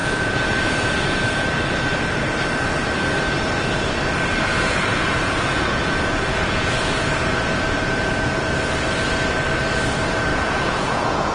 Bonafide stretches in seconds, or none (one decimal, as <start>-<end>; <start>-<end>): 1.6-4.5; 8.4-10.3